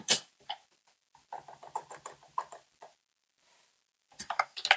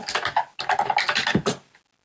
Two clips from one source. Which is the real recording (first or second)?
second